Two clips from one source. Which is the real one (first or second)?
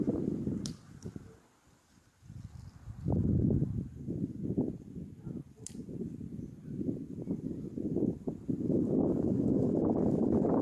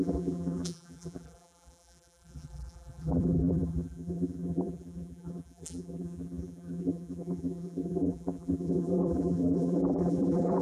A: first